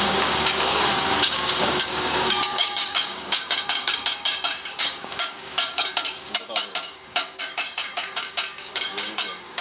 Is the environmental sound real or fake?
fake